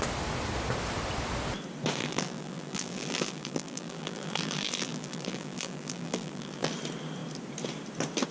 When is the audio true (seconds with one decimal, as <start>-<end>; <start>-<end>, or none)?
0.0-2.0; 6.7-8.3